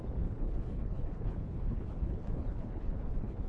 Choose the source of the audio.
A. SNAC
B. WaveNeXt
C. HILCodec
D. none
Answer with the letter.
C